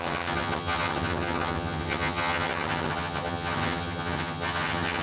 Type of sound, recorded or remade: remade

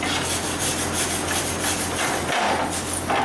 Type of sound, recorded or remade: recorded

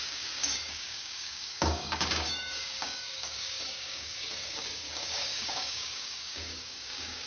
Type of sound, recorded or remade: remade